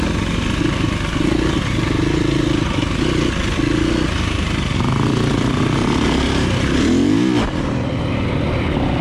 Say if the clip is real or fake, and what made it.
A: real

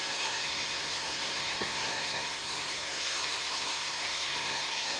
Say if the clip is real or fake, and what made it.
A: fake, codec, SNAC